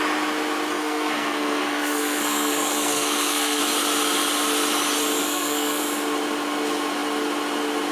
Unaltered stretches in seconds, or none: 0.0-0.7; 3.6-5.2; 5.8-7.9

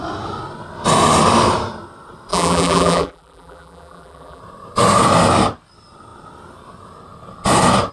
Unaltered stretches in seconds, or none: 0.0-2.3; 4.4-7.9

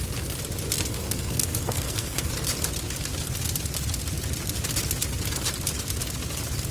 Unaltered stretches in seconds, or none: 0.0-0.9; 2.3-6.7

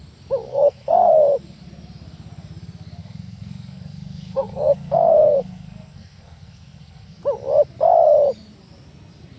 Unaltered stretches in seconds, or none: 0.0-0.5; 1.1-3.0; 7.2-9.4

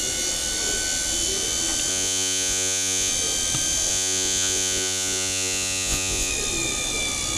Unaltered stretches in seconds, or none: 0.0-1.9; 3.1-3.9; 6.3-7.4